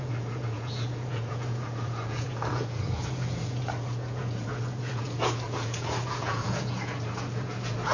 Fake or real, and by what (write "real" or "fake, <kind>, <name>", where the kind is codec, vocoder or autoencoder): fake, vocoder, Vocos